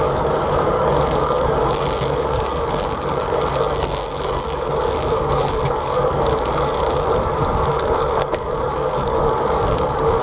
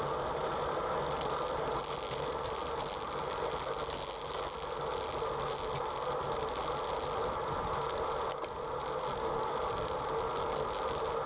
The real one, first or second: second